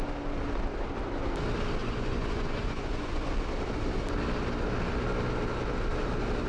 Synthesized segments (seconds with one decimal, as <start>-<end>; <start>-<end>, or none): 1.8-3.3